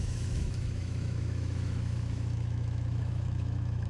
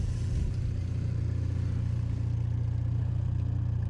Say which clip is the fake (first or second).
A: first